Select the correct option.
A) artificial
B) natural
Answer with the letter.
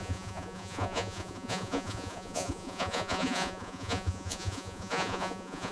A